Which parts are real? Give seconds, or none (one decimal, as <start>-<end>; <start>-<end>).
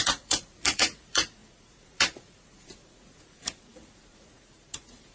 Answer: none